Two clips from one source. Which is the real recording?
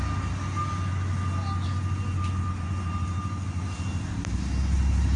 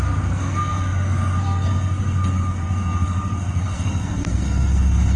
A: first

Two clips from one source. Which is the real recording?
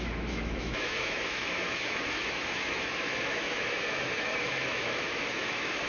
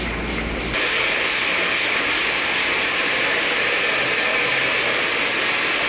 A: second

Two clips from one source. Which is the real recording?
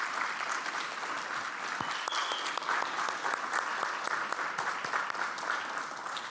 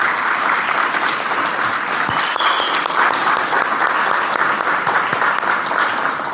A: first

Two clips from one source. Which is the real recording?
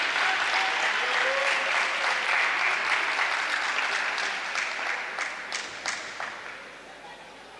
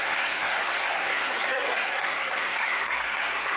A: first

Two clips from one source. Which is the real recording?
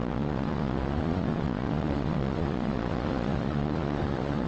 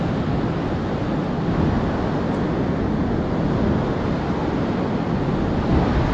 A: second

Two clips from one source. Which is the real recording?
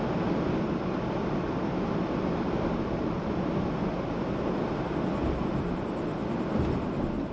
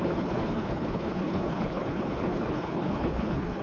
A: first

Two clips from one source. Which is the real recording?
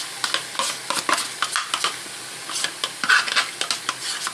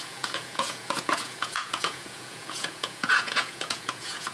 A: first